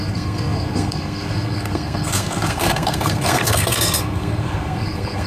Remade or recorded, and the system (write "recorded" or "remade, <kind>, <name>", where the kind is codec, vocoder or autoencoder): remade, codec, SNAC